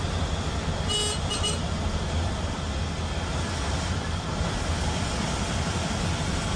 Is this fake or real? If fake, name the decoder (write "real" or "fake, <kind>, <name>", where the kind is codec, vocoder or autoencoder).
real